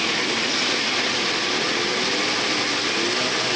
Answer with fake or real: real